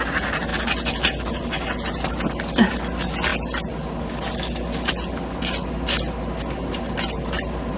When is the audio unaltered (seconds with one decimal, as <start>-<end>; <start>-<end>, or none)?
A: 0.0-7.8